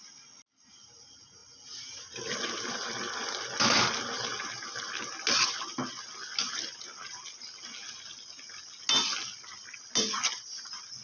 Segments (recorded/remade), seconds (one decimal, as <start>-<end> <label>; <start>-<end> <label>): 0.0-11.0 recorded